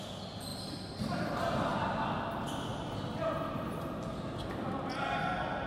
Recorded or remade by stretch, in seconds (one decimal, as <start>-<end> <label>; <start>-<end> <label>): 0.0-5.7 recorded